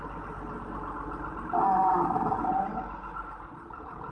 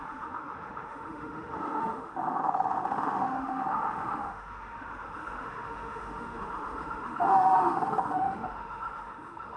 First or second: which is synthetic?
second